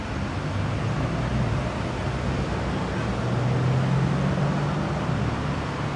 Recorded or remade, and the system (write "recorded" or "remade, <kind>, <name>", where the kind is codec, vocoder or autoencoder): recorded